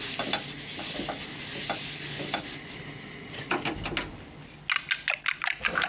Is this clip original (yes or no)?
yes